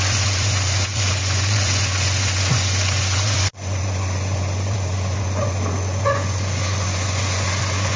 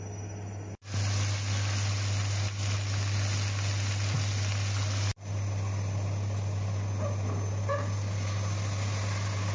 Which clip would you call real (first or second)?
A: second